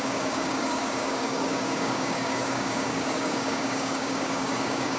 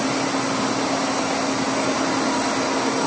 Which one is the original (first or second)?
second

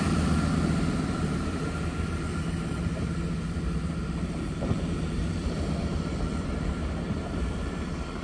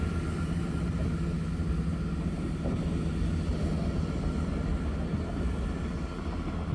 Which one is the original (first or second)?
second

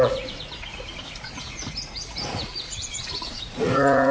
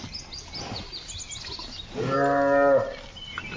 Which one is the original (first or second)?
second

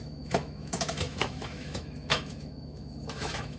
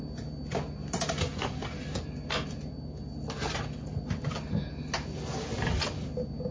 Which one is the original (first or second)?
second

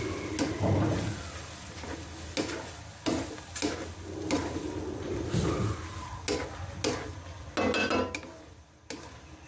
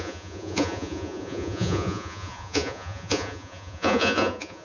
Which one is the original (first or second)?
first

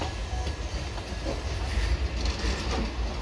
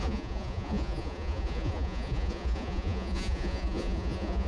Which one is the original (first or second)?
first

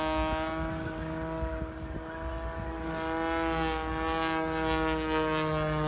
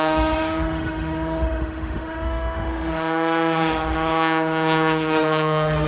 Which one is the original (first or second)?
first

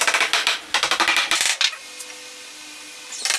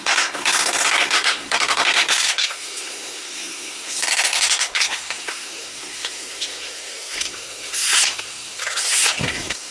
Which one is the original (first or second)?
first